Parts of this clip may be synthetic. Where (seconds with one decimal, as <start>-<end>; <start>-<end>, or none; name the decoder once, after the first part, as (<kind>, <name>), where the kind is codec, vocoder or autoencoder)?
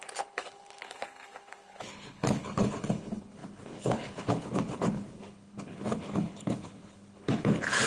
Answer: 0.0-7.9 (codec, HILCodec)